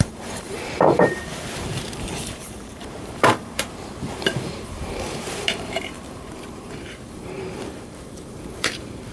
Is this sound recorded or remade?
remade